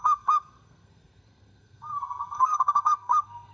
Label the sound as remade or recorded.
remade